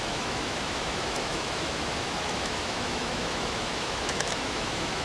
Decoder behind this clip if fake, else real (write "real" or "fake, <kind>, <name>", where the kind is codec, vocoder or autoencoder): fake, autoencoder, DAC-VAE